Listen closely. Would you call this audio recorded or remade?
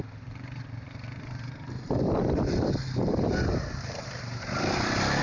recorded